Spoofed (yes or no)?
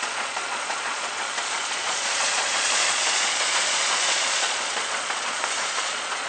yes